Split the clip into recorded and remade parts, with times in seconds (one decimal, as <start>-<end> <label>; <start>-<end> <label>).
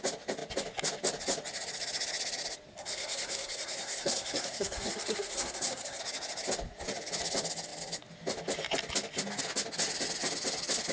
0.0-2.7 recorded; 2.7-6.0 remade; 6.0-10.9 recorded